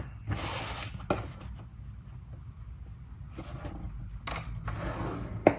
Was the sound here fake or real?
real